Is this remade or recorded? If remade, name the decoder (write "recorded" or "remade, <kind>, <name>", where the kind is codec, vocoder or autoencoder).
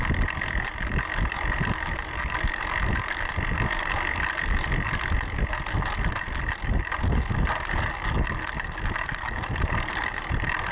recorded